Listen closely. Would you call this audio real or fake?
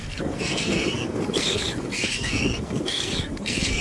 fake